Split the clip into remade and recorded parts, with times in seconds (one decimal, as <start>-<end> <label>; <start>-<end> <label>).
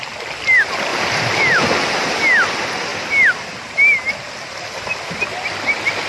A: 0.0-0.9 recorded; 0.9-1.6 remade; 1.6-6.1 recorded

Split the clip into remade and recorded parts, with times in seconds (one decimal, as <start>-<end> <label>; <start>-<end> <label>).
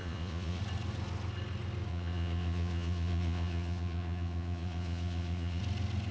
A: 0.0-0.6 remade; 0.6-1.9 recorded; 1.9-5.6 remade; 5.6-6.1 recorded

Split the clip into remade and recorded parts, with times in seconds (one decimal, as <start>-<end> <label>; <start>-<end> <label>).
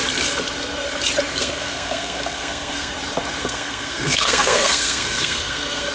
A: 0.0-1.3 recorded; 1.3-2.9 remade; 2.9-3.4 recorded; 3.4-5.9 remade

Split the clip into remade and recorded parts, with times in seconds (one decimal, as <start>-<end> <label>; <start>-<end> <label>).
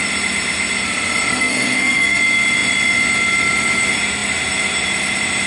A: 0.0-1.3 recorded; 1.3-2.2 remade; 2.2-5.5 recorded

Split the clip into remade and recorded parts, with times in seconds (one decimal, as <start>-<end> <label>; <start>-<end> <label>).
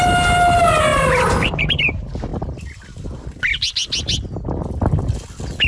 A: 0.0-0.9 recorded; 0.9-1.8 remade; 1.8-5.7 recorded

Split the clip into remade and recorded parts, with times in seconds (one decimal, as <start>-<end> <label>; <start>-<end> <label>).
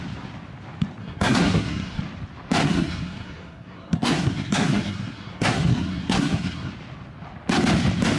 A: 0.0-1.0 recorded; 1.0-2.0 remade; 2.0-2.6 recorded; 2.6-6.7 remade; 6.7-8.2 recorded